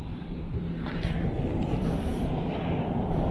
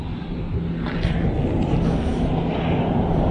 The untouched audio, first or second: second